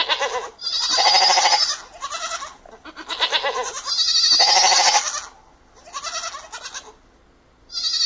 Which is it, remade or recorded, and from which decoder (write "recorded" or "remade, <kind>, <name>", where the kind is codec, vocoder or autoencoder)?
recorded